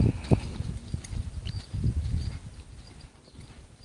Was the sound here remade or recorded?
recorded